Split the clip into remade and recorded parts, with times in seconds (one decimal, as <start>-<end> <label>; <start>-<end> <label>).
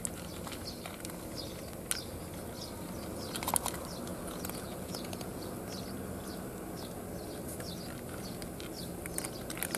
0.0-4.1 recorded; 4.1-5.5 remade; 5.5-9.8 recorded